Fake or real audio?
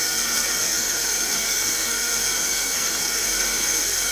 fake